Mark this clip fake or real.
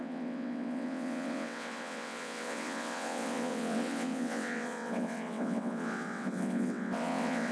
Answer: fake